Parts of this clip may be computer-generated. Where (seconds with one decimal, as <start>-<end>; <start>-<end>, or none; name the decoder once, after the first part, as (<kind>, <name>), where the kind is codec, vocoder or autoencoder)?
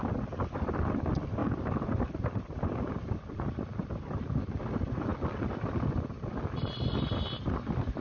1.4-2.4 (vocoder, BigVGAN v2); 5.1-6.3